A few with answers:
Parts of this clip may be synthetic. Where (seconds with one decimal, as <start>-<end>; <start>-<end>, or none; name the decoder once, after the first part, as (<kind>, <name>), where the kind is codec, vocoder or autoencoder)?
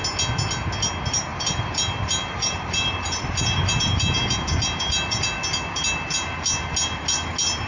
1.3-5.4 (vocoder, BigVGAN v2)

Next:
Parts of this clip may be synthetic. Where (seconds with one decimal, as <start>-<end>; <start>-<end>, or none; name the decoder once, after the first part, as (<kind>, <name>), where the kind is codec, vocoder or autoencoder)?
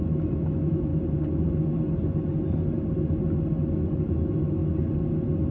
0.0-0.9 (autoencoder, DAC-VAE); 3.7-4.6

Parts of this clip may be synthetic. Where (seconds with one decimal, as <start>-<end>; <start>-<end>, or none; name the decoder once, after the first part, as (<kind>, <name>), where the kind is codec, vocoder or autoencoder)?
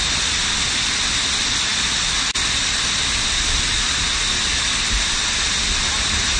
none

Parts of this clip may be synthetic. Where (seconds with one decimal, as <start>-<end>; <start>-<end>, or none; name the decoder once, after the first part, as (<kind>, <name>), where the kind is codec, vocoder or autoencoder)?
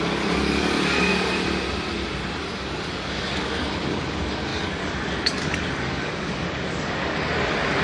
0.0-1.1 (codec, DAC); 2.4-7.8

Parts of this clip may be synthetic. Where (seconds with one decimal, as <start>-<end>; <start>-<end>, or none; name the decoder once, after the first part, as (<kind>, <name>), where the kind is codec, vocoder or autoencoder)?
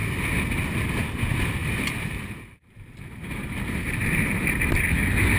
1.6-4.8 (vocoder, BigVGAN v2)